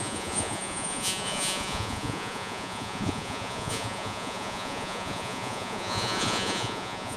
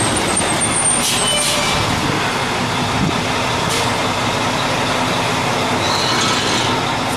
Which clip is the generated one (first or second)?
first